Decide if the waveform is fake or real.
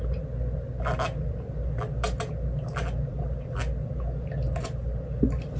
real